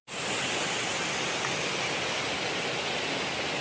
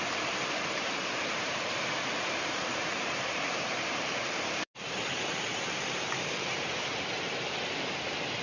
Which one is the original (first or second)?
first